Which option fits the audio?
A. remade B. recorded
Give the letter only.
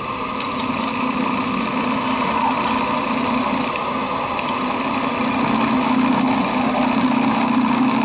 B